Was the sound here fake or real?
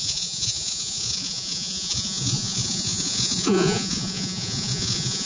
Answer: fake